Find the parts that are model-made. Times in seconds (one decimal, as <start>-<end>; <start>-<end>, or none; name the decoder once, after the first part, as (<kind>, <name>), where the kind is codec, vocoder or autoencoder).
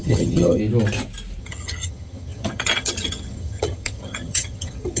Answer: 0.0-0.6 (vocoder, HiFi-GAN); 1.4-5.0